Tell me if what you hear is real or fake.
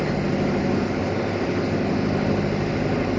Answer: real